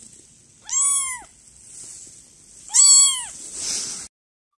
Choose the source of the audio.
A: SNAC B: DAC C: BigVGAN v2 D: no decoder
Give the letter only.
D